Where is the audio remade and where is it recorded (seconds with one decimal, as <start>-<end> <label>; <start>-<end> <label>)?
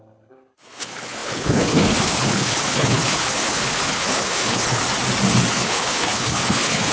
0.0-4.8 remade; 4.8-5.5 recorded; 5.5-6.9 remade